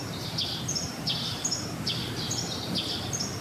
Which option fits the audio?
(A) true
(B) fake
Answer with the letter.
B